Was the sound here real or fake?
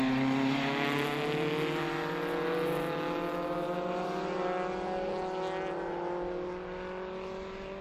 real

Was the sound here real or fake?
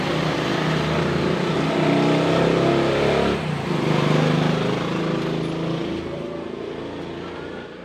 real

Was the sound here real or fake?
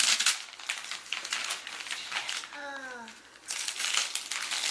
real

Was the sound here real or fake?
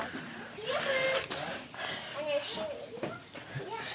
real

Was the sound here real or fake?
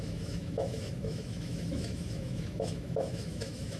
fake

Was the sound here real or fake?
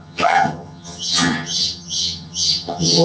fake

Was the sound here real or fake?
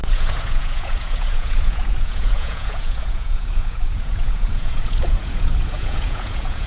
fake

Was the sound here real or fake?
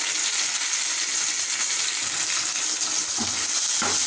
real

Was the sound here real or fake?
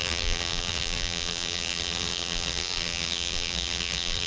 fake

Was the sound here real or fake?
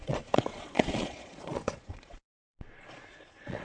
fake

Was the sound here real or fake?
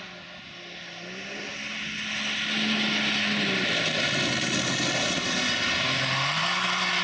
real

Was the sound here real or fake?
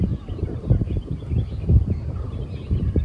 real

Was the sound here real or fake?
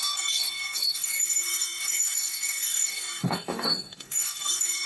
fake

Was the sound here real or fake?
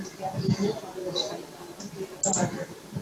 real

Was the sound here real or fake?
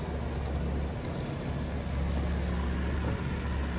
real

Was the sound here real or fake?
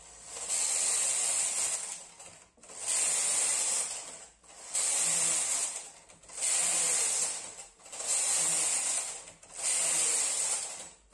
real